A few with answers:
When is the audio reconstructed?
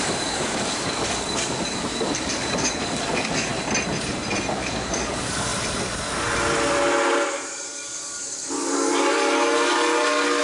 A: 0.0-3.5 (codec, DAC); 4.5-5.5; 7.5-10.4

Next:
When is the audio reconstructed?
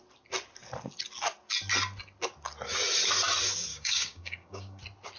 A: 3.7-4.8 (codec, DAC)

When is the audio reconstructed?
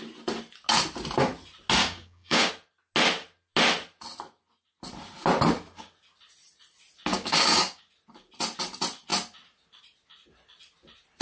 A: 1.8-2.5 (codec, DAC); 7.1-7.8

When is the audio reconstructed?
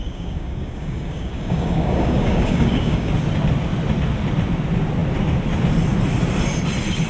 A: 0.0-3.1 (codec, DAC)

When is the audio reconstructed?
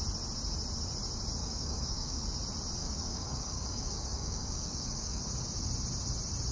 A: 1.4-2.2 (codec, DAC); 2.8-5.2